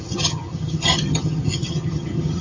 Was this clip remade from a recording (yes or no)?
yes